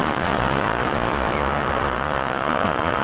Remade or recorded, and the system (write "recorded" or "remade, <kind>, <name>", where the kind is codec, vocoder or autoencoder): remade, vocoder, Vocos